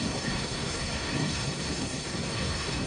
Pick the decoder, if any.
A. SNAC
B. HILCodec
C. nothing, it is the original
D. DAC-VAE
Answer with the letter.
A